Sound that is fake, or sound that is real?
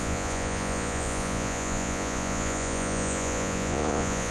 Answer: fake